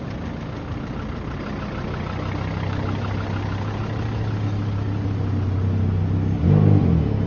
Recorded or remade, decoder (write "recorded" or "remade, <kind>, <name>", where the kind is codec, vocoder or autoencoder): recorded